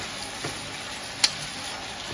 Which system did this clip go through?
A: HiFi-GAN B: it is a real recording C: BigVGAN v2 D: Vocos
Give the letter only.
B